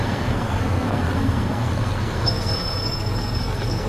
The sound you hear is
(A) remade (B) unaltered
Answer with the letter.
A